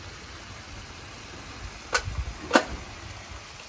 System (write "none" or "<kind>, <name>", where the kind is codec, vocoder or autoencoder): none